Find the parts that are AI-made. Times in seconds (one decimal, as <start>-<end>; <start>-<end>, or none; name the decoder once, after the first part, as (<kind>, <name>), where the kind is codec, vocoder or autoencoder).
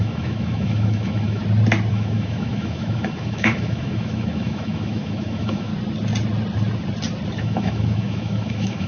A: 0.0-1.4 (autoencoder, DAC-VAE); 1.9-5.7; 7.4-8.9